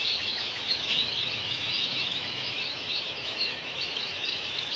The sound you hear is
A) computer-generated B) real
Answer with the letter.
A